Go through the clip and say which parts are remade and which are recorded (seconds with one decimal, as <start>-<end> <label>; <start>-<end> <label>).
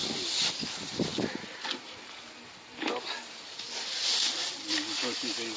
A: 0.0-5.6 recorded